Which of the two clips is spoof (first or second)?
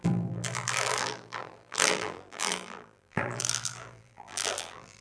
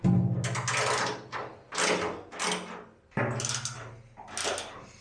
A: first